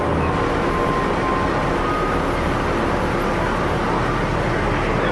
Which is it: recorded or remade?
recorded